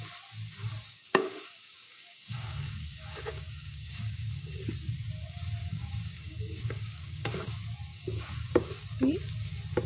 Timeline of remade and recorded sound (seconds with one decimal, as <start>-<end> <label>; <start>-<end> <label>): 0.0-0.6 recorded; 0.6-4.6 remade; 4.6-5.6 recorded; 5.6-7.5 remade; 7.5-7.9 recorded; 7.9-8.7 remade; 8.7-9.9 recorded